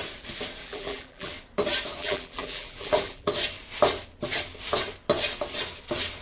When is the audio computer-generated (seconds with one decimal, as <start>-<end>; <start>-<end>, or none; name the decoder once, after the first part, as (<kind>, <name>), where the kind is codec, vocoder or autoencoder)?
0.6-1.3 (vocoder, BigVGAN v2); 2.0-3.3